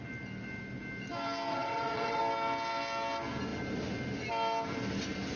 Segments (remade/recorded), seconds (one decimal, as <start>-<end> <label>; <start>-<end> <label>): 0.0-1.5 recorded; 1.5-2.2 remade; 2.2-5.4 recorded